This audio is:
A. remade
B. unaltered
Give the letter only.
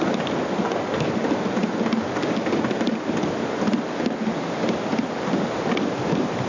B